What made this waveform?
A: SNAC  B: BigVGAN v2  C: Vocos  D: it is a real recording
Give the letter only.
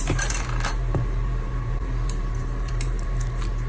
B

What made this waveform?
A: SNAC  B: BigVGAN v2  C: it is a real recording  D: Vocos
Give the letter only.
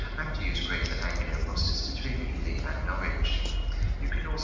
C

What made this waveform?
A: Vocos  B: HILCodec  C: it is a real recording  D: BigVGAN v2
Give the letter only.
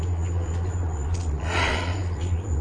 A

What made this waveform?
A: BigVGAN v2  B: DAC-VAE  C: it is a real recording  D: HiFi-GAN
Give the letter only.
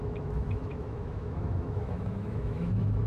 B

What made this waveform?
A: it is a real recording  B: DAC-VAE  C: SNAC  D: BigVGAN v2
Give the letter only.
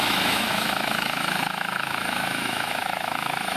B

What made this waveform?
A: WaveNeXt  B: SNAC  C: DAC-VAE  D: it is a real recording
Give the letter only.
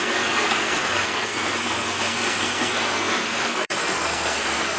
B